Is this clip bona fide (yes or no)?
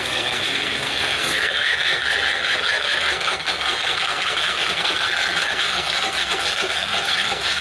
no